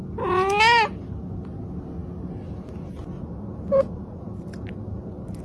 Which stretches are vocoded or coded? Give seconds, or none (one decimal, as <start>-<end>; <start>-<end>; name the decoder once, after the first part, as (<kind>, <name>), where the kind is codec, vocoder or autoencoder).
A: none